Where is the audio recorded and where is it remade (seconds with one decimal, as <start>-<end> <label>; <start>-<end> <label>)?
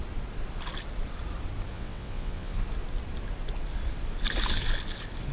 0.0-1.7 recorded; 1.7-2.6 remade; 2.6-5.3 recorded